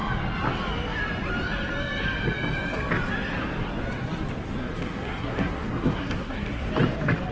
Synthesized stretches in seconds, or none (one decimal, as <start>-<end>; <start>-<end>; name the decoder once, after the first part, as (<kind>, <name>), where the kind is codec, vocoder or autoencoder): 4.6-6.7 (codec, SNAC)